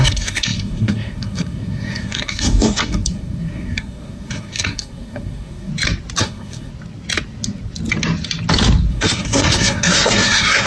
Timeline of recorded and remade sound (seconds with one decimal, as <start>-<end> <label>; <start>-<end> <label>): 0.0-5.7 remade; 5.7-6.2 recorded; 6.2-6.7 remade; 6.7-8.9 recorded; 8.9-10.7 remade

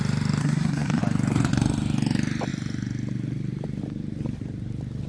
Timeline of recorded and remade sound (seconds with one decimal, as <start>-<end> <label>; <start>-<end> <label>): 0.0-0.4 recorded; 0.4-1.0 remade; 1.0-5.1 recorded